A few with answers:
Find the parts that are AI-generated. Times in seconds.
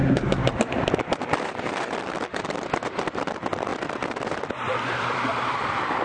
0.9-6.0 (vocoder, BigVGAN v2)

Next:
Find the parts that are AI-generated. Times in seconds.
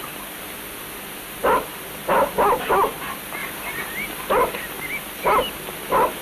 3.4-4.3 (vocoder, BigVGAN v2)